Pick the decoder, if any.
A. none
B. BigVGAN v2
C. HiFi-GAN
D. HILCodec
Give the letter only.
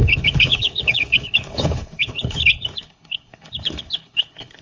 D